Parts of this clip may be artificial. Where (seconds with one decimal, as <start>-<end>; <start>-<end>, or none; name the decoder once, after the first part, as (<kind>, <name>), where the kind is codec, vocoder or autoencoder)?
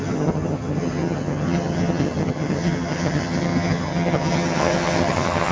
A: 0.0-5.5 (vocoder, HiFi-GAN)